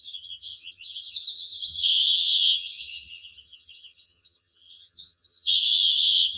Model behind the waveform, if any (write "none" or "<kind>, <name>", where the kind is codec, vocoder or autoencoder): vocoder, HiFi-GAN